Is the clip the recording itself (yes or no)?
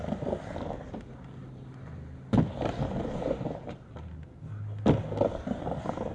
yes